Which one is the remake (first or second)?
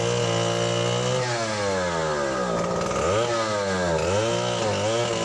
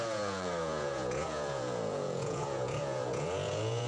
second